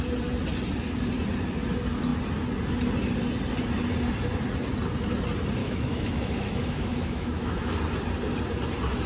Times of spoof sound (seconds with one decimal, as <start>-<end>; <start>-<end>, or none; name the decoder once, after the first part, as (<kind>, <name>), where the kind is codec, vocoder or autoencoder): 5.6-7.8 (autoencoder, DAC-VAE)